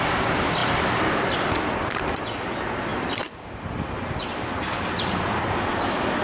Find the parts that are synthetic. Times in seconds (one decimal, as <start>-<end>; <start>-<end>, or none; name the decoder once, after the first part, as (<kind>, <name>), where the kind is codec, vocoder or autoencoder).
none